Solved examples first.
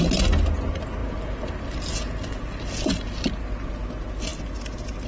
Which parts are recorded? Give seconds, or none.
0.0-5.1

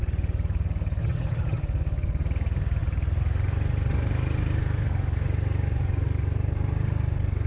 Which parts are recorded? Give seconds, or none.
0.0-1.0; 1.6-7.5

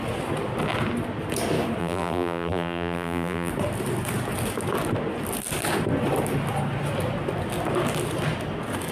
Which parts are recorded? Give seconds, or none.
0.0-1.8; 3.5-8.9

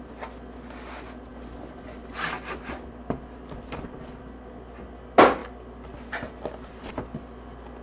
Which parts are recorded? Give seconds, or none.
0.0-7.8

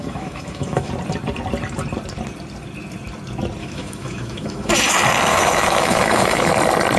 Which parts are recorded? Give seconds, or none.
0.9-3.6; 4.7-5.3; 6.5-7.0